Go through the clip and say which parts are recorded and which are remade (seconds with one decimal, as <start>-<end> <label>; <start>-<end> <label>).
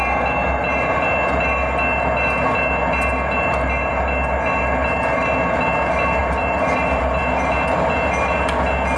0.0-6.2 recorded; 6.2-7.2 remade; 7.2-9.0 recorded